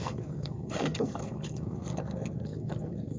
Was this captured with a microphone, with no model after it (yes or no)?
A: no